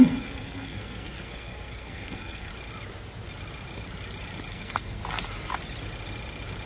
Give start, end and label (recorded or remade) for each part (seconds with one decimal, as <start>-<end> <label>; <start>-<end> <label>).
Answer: 0.0-2.5 remade; 2.5-4.5 recorded; 4.5-5.0 remade; 5.0-6.7 recorded